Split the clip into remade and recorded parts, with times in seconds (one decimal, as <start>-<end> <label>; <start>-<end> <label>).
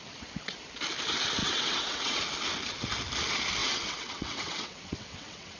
0.0-1.4 recorded; 1.4-2.2 remade; 2.2-3.6 recorded; 3.6-5.6 remade